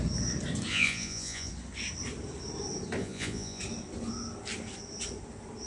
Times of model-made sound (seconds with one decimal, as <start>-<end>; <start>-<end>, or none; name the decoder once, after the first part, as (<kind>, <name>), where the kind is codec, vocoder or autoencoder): 0.7-1.5 (vocoder, Vocos); 3.0-3.6